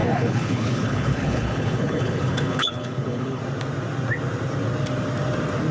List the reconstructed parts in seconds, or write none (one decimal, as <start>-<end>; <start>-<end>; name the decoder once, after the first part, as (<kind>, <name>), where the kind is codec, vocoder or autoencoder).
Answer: 0.0-3.4 (codec, HILCodec)